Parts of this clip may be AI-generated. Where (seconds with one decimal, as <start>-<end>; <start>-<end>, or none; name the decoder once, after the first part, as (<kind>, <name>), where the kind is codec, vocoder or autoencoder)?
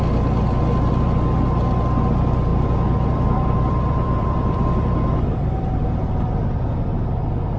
2.5-7.1 (vocoder, BigVGAN v2)